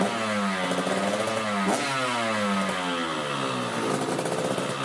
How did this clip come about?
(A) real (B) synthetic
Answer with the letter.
A